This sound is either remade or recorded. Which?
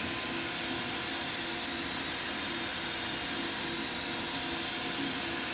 recorded